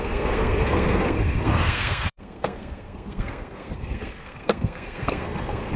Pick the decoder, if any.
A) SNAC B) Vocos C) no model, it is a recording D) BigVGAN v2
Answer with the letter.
A